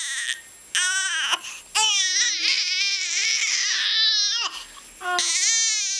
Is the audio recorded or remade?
recorded